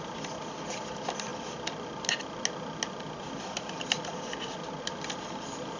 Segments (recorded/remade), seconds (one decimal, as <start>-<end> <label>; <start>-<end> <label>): 0.0-5.8 recorded

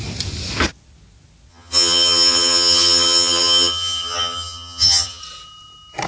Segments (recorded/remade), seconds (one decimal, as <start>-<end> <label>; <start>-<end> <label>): 0.0-1.5 recorded; 1.5-5.2 remade; 5.2-6.1 recorded